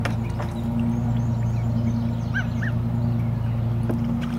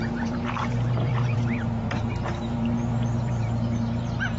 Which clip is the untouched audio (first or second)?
first